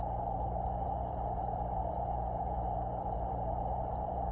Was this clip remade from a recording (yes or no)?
yes